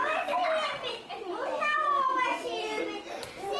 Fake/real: real